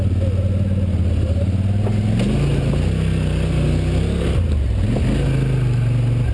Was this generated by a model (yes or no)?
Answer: no